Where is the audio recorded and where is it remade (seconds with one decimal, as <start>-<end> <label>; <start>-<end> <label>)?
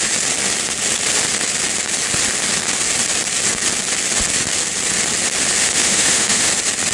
0.0-5.6 recorded; 5.6-6.5 remade; 6.5-6.9 recorded